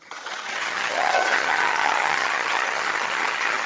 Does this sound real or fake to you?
fake